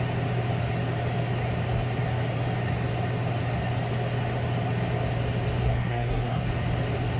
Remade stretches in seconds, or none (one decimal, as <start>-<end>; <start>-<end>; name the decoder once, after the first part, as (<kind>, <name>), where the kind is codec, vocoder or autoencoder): 5.6-6.5 (codec, SNAC)